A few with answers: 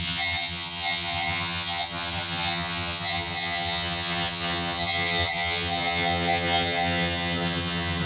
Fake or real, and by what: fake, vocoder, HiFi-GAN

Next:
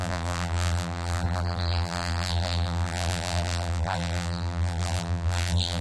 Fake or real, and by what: fake, vocoder, BigVGAN v2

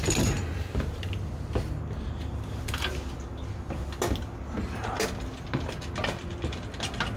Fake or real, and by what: real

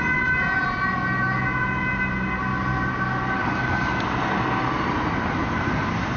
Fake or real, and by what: real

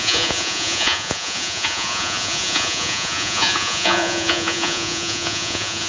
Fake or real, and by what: fake, vocoder, Vocos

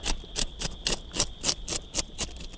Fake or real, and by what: real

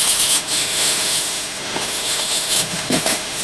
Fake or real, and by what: fake, autoencoder, DAC-VAE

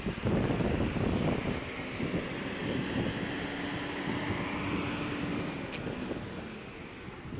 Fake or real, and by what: real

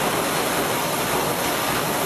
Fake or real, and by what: real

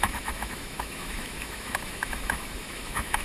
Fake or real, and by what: fake, autoencoder, DAC-VAE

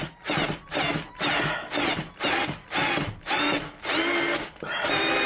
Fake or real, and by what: real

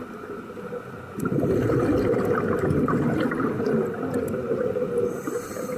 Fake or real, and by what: real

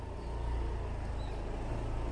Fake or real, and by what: real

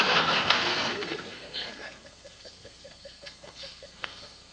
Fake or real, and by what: fake, codec, SNAC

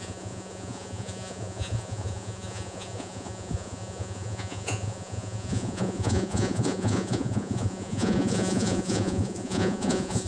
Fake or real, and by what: fake, vocoder, Vocos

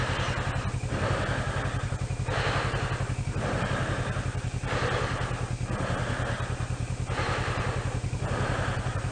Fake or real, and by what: real